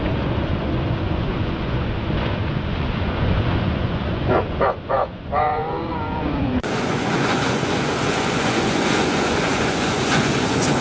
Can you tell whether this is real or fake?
fake